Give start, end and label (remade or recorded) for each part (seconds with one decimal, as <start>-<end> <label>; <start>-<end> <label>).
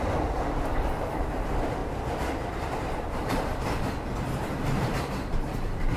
0.0-1.8 remade; 1.8-2.5 recorded; 2.5-3.5 remade; 3.5-4.2 recorded; 4.2-6.0 remade